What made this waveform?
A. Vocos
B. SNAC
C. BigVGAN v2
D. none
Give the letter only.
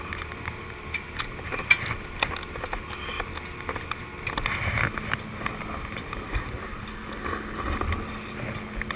D